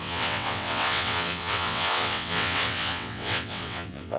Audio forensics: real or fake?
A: fake